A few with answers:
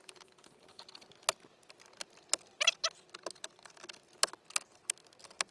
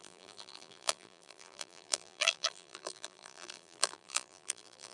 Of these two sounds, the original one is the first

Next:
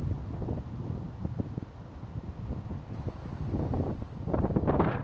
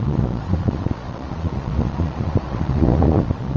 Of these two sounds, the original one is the first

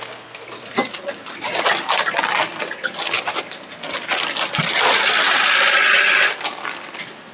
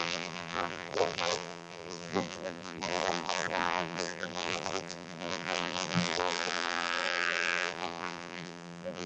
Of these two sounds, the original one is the first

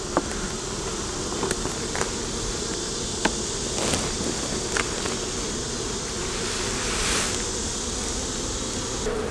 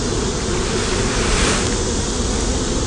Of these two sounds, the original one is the first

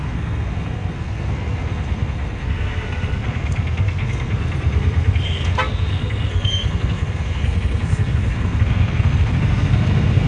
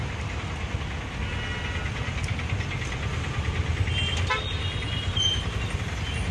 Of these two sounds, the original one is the second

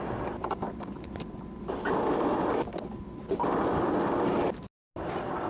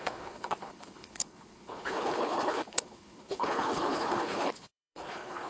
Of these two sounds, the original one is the first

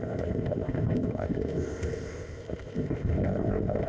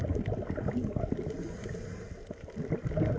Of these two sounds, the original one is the second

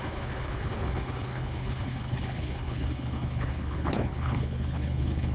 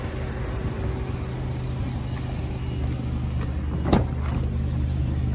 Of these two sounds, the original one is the second